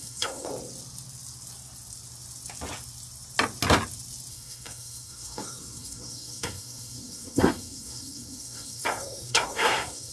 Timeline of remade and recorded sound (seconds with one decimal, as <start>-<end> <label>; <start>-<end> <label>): 0.0-0.5 remade; 0.5-4.3 recorded; 4.3-10.1 remade